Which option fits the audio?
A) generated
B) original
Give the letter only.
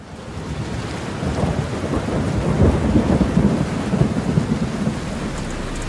B